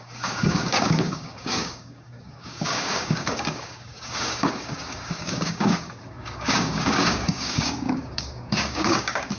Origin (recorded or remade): remade